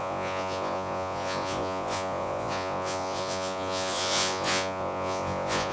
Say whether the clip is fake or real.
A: fake